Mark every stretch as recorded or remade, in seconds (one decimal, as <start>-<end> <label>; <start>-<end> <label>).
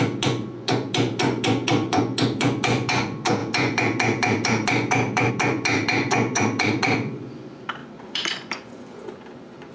0.0-9.7 remade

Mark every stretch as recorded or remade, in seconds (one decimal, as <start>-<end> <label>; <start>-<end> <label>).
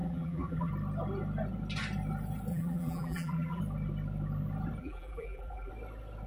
0.0-0.7 remade; 0.7-2.5 recorded; 2.5-3.6 remade; 3.6-4.8 recorded; 4.8-5.7 remade; 5.7-6.3 recorded